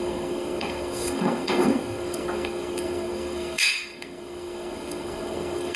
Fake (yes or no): yes